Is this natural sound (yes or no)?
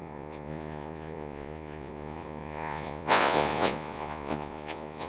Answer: no